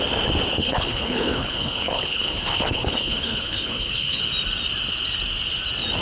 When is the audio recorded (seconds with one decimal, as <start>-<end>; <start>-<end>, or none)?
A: 0.0-0.6; 4.2-6.0